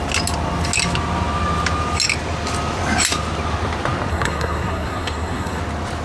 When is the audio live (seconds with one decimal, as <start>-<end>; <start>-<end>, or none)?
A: 0.0-4.1; 5.6-6.0